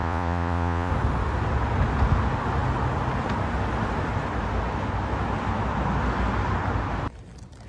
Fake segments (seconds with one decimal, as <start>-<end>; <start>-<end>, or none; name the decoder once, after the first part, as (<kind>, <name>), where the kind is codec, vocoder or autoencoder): 0.0-0.9 (vocoder, Vocos)